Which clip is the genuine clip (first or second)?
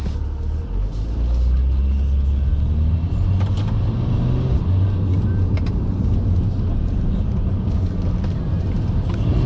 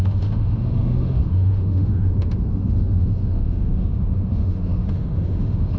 first